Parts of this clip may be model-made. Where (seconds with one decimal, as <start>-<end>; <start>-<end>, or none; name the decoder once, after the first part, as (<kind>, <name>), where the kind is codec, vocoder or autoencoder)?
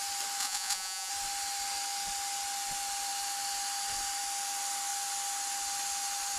0.4-1.1 (vocoder, Vocos)